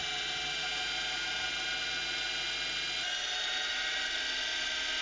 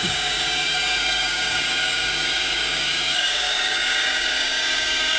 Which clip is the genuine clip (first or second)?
first